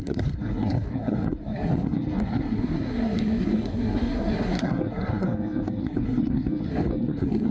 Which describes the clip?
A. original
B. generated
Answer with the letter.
B